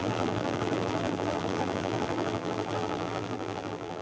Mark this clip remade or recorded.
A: remade